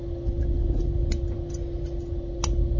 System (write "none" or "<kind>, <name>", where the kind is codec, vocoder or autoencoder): none